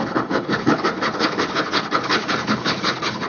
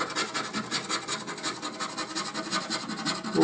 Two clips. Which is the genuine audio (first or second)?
second